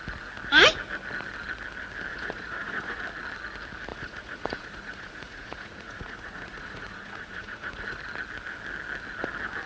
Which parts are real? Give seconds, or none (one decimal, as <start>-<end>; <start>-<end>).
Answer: 0.0-2.1; 3.0-3.9; 8.0-9.7